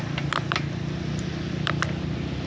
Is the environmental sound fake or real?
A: real